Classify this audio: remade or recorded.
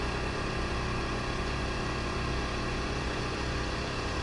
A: remade